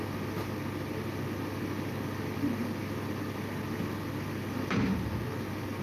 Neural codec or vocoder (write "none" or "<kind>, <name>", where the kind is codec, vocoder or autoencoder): none